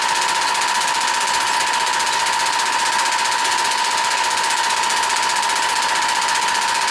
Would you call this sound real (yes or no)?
yes